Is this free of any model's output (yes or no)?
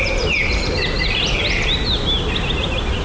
yes